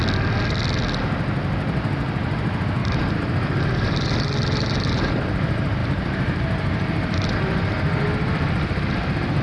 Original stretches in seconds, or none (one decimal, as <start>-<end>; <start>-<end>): 0.0-2.8; 5.1-5.8; 7.4-9.4